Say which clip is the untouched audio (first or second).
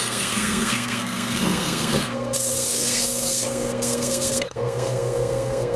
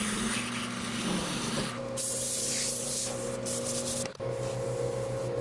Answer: second